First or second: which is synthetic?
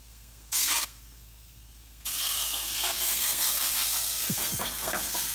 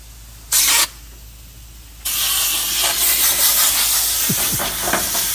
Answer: first